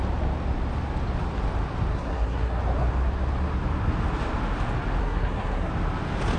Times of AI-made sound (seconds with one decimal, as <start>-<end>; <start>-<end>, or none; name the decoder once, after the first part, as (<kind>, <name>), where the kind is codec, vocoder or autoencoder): 1.9-2.6 (codec, SNAC); 5.0-5.7